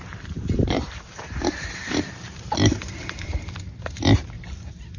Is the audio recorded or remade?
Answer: remade